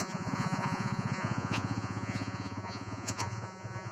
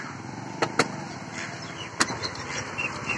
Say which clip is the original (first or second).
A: second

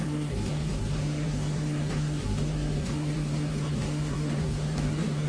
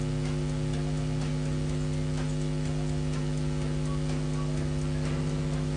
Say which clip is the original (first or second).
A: second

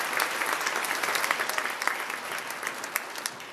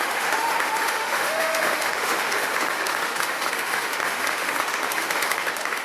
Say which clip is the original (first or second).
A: first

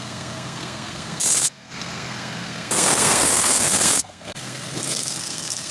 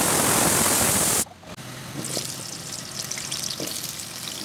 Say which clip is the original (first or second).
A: second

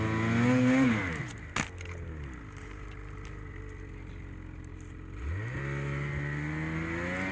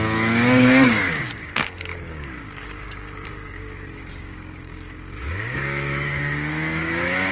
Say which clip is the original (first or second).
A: first